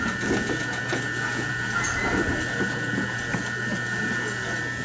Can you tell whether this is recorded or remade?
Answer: recorded